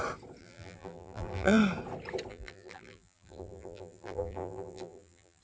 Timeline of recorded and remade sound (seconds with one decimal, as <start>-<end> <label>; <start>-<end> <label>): 0.0-0.4 recorded; 0.4-1.6 remade; 1.6-2.3 recorded; 2.3-5.4 remade